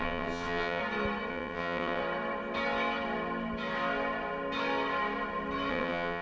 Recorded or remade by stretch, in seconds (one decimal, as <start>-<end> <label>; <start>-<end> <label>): 0.0-0.8 remade; 0.8-1.3 recorded; 1.3-2.0 remade; 2.0-5.7 recorded; 5.7-6.2 remade